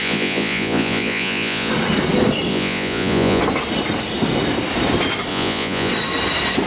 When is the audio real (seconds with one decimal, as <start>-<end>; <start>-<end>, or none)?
1.7-2.5; 3.4-5.3; 5.9-6.7